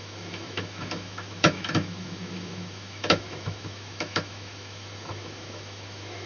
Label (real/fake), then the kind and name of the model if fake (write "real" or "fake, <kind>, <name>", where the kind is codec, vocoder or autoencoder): fake, autoencoder, DAC-VAE